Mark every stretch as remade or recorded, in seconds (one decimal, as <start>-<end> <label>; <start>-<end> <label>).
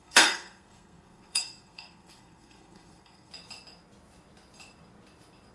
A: 0.0-3.3 remade; 3.3-5.5 recorded